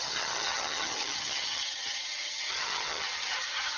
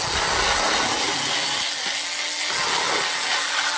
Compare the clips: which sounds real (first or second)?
second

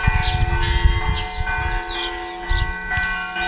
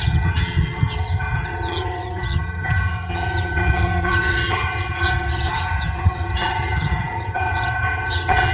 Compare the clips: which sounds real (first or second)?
first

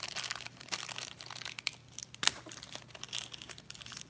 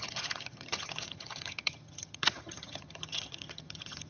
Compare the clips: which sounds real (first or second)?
first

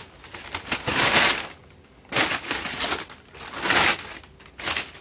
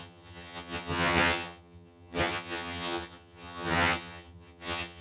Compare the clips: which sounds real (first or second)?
first